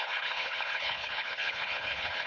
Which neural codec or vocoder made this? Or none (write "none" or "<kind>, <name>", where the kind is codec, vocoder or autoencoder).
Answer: codec, HILCodec